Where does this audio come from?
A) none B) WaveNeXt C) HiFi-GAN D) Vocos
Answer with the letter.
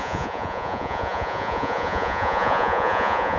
D